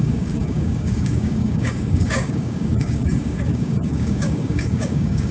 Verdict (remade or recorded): remade